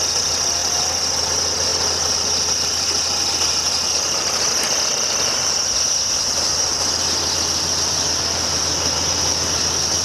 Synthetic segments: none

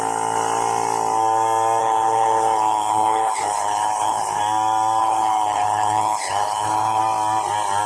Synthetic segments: 1.8-4.4 (codec, HILCodec); 5.0-7.0

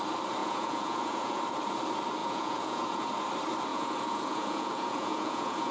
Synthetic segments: 0.4-1.4 (vocoder, Vocos); 2.2-3.1; 3.7-5.7

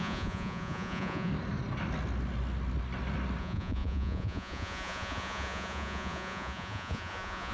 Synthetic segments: 0.0-1.3 (vocoder, Vocos); 3.4-7.5

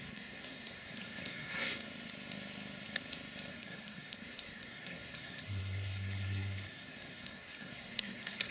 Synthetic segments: 0.0-1.7 (codec, SNAC); 3.5-8.5